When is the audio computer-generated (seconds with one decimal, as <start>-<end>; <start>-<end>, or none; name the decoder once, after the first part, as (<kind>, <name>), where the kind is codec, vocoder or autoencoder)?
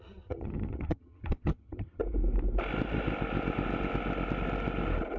0.0-2.0 (vocoder, HiFi-GAN)